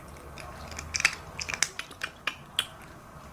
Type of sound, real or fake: real